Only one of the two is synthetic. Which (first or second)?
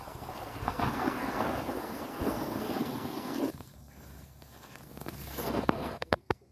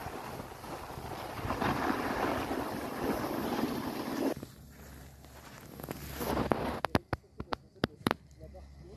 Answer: first